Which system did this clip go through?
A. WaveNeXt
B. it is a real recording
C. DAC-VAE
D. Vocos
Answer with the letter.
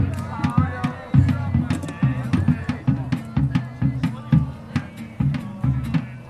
B